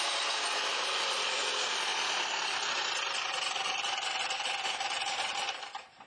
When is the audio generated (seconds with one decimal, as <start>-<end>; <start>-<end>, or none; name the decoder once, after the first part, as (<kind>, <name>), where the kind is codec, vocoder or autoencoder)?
1.9-5.6 (vocoder, BigVGAN v2)